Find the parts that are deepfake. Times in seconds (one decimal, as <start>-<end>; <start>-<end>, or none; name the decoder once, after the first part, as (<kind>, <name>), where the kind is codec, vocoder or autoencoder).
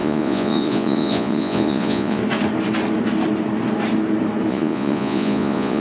0.0-2.2 (vocoder, Vocos); 4.5-5.8